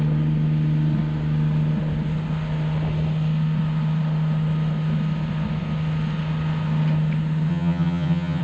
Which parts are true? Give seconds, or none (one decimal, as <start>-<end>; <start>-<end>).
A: 0.0-7.5